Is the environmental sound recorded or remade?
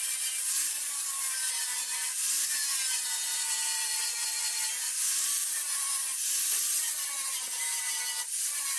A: remade